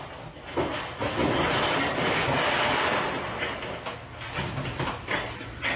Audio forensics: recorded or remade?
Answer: recorded